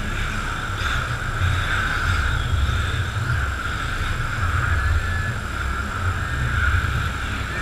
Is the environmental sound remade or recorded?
recorded